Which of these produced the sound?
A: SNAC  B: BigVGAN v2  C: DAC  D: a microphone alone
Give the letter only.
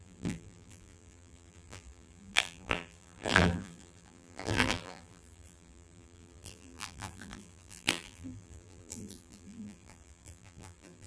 B